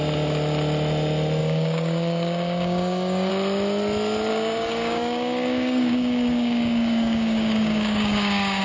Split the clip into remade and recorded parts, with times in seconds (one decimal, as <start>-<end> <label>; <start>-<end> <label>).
0.0-1.4 recorded; 1.4-3.3 remade; 3.3-4.3 recorded; 4.3-8.6 remade